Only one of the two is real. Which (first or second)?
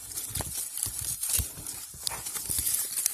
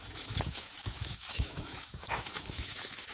first